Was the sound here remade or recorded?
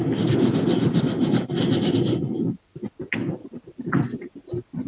recorded